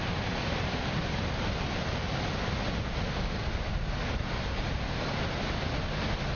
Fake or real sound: real